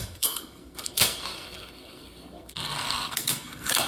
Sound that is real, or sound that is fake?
fake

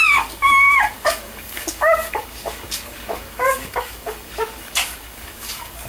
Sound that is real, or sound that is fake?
fake